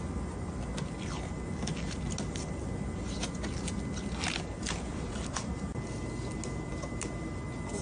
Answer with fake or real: real